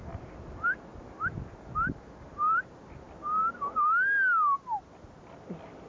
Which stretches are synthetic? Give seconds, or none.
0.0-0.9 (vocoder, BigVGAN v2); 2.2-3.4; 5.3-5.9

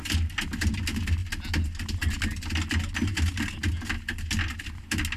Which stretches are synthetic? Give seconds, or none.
none

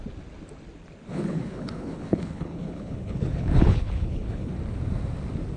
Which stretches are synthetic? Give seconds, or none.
1.1-4.5 (codec, HILCodec)